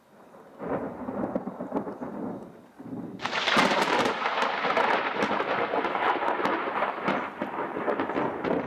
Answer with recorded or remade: recorded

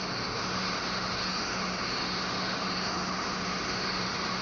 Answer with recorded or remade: remade